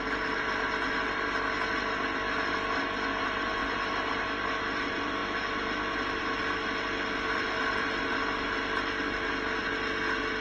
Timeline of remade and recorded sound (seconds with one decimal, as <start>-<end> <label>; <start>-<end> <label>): 0.0-10.4 recorded